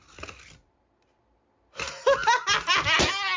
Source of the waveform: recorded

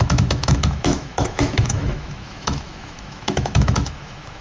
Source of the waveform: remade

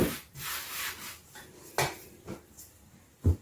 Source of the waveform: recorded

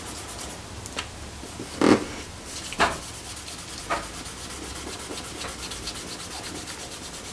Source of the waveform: recorded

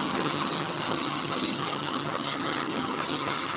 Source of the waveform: remade